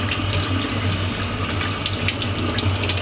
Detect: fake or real real